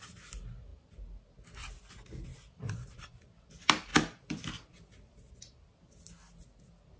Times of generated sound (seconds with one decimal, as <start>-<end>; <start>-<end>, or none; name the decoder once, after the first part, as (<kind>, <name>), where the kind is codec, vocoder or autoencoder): 2.3-3.2 (vocoder, BigVGAN v2); 3.9-5.3